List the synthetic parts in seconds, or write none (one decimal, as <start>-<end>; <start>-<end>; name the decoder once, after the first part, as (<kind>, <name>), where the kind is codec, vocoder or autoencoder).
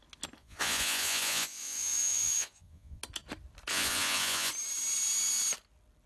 0.4-3.0 (vocoder, Vocos); 3.7-4.5